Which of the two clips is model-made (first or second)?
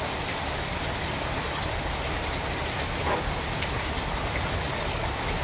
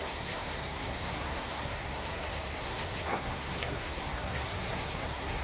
second